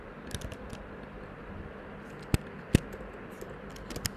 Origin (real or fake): real